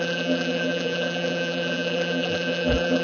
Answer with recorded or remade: remade